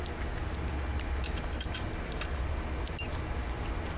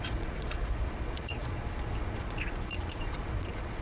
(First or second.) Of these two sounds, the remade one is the second